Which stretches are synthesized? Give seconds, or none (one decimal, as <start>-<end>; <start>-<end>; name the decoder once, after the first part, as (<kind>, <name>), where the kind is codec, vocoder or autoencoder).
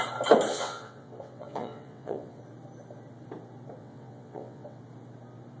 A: 0.5-2.4 (vocoder, WaveNeXt); 3.8-4.8